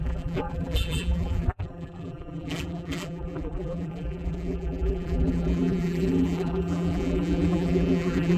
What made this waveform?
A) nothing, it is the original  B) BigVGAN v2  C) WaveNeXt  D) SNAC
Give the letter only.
B